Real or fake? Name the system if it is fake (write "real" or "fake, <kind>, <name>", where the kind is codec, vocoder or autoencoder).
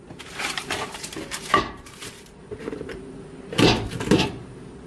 fake, vocoder, BigVGAN v2